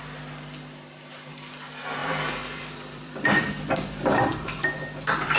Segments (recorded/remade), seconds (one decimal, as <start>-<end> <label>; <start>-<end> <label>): 0.0-2.0 recorded; 2.0-5.4 remade